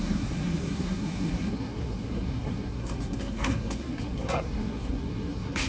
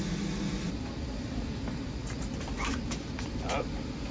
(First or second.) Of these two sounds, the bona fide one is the second